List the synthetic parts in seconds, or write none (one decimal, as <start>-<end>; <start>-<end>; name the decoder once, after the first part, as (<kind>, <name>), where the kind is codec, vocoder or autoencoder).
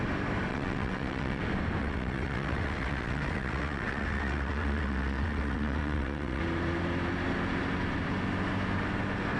0.5-1.4 (vocoder, WaveNeXt); 1.8-6.4